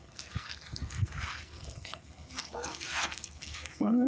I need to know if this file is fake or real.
fake